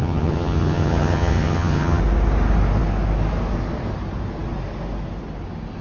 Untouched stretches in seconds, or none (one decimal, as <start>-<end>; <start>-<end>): 2.0-5.8